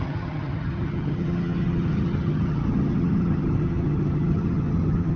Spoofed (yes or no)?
yes